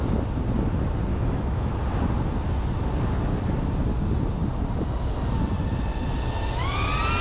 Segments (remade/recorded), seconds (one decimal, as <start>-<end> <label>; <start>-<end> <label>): 0.0-1.1 recorded; 1.1-1.7 remade; 1.7-7.2 recorded